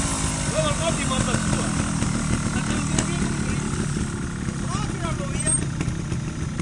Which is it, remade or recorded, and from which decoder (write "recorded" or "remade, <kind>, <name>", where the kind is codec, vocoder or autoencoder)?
recorded